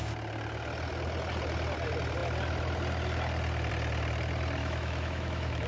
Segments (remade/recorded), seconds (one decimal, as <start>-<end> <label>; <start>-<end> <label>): 0.0-4.6 recorded; 4.6-5.7 remade